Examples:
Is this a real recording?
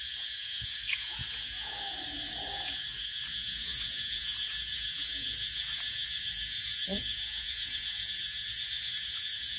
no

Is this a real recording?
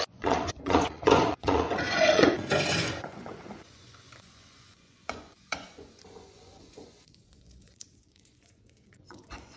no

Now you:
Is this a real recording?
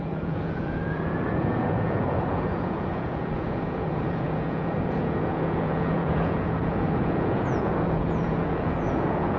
no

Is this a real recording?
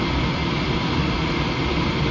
yes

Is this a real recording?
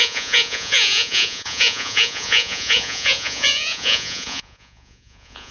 no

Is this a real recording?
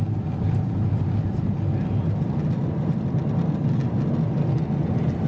yes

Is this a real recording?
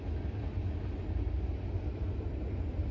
yes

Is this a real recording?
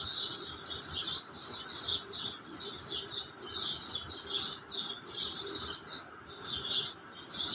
yes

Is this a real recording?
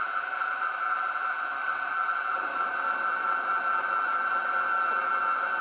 yes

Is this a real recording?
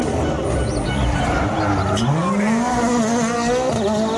yes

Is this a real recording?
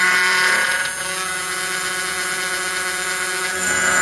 no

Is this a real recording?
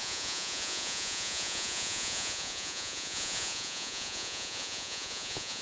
no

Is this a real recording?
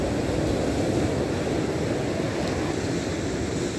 yes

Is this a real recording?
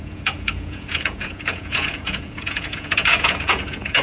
no